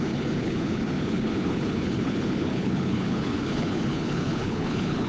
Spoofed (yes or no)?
yes